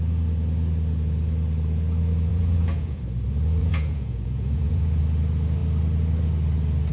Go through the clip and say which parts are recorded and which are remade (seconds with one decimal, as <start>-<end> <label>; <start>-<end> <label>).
0.0-2.3 recorded; 2.3-3.0 remade; 3.0-3.6 recorded; 3.6-5.0 remade; 5.0-6.9 recorded